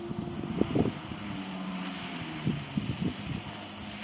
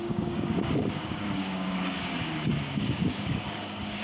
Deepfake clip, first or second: second